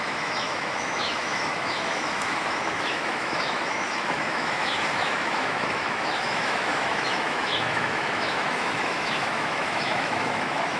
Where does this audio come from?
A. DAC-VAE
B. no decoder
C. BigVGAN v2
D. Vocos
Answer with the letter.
A